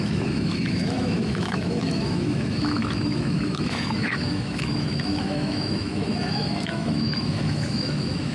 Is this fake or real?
fake